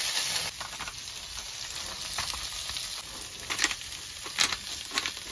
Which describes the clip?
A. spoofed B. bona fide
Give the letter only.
B